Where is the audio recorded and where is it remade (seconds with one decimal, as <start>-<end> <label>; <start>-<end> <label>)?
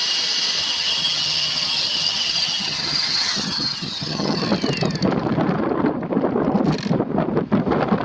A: 0.0-0.6 recorded; 0.6-4.4 remade; 4.4-8.0 recorded